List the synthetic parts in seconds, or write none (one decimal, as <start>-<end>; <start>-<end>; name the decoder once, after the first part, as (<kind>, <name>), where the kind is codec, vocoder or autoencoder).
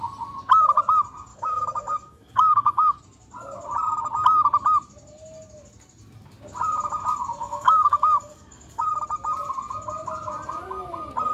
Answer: 1.3-3.0 (codec, DAC); 7.4-8.9